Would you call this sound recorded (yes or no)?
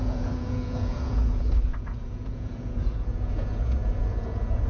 no